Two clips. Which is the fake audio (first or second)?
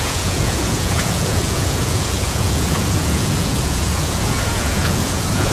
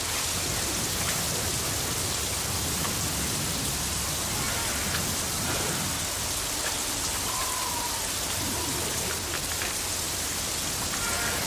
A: first